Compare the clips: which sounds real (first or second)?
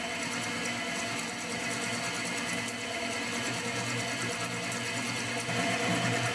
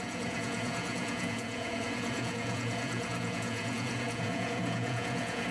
first